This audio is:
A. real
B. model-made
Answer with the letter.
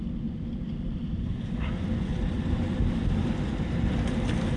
A